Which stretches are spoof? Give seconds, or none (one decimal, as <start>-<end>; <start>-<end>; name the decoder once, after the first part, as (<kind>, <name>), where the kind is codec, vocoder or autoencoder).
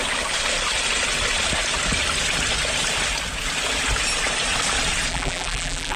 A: 5.1-6.0 (vocoder, BigVGAN v2)